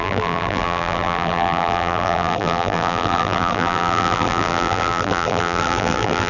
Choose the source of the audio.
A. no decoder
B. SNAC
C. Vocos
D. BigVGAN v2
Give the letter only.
D